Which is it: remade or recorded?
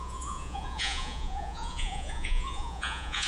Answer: remade